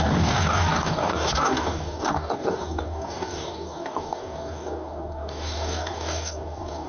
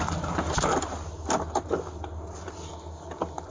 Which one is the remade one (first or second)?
first